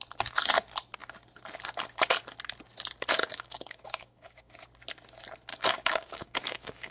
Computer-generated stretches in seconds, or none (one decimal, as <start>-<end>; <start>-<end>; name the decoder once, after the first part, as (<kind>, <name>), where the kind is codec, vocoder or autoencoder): 3.2-4.6 (codec, DAC); 5.5-6.9